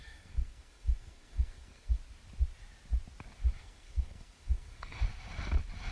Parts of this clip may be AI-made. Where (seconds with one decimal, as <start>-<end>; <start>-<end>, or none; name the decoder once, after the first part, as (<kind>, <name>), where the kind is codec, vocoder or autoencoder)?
0.0-2.0 (codec, SNAC); 3.6-5.0